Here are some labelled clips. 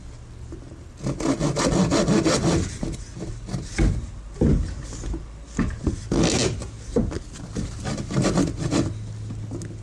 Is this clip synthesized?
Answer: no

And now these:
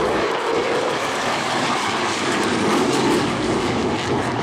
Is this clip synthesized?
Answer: yes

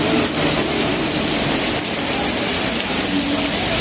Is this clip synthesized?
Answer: no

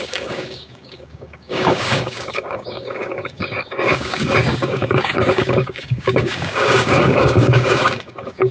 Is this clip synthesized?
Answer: yes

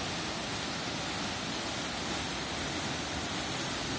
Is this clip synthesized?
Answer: no